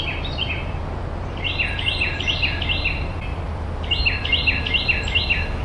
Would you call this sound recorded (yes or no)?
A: yes